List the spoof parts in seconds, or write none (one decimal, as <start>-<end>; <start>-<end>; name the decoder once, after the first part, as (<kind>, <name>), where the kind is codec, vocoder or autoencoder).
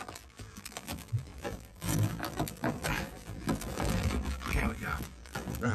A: 0.0-5.7 (vocoder, BigVGAN v2)